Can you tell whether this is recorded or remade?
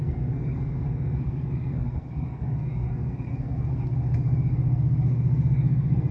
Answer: remade